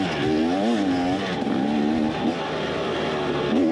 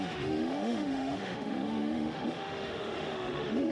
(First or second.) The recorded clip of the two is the first